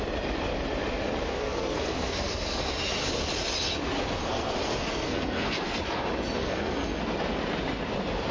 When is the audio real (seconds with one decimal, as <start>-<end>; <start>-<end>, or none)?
0.0-1.3; 2.6-4.2; 5.8-6.4; 7.0-8.3